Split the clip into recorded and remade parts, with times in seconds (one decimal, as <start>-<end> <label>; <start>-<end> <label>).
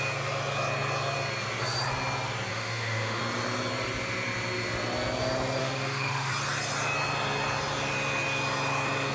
0.0-2.5 recorded; 2.5-3.2 remade; 3.2-5.6 recorded; 5.6-6.3 remade; 6.3-9.1 recorded